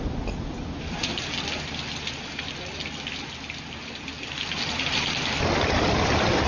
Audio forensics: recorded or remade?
recorded